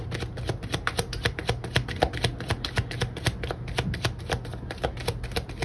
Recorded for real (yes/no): yes